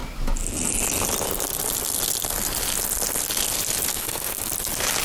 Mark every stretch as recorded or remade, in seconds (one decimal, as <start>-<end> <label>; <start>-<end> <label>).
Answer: 0.0-3.9 recorded; 3.9-4.5 remade; 4.5-5.0 recorded